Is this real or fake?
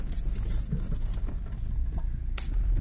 real